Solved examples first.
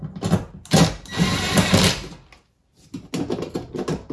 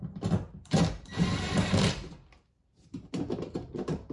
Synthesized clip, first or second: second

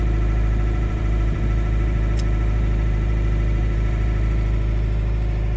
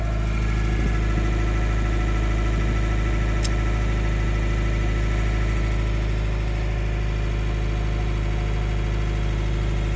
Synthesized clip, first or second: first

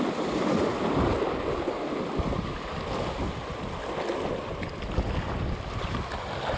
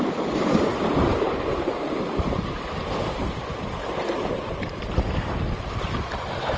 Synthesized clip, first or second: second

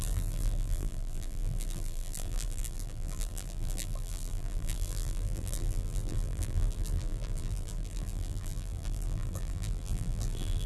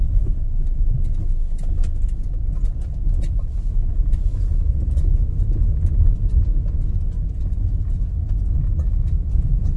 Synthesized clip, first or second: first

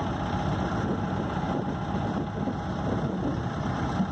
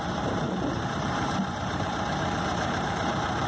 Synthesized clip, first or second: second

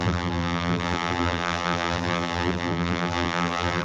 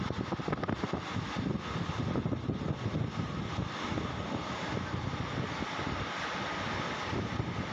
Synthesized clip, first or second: first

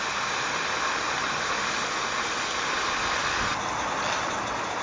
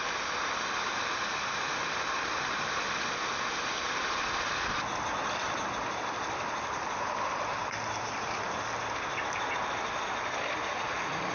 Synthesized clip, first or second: second